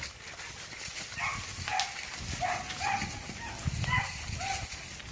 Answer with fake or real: real